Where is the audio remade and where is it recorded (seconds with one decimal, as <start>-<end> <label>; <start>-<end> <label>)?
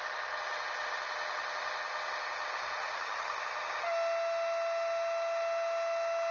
0.0-2.8 recorded; 2.8-3.4 remade; 3.4-6.3 recorded